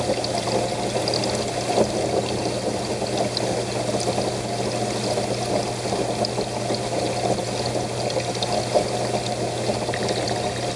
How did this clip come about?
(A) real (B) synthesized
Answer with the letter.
A